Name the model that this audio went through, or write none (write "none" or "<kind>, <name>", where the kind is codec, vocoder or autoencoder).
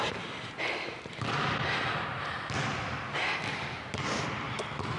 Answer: none